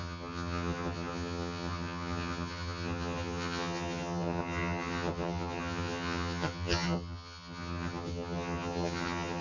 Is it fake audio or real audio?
fake